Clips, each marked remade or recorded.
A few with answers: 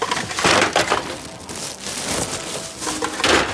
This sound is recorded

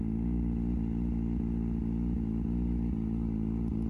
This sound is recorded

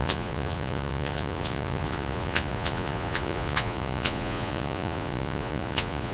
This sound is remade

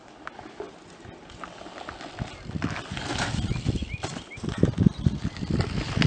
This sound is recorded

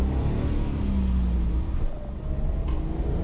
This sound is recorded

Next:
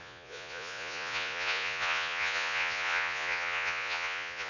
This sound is remade